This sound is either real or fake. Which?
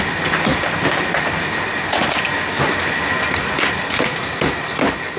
real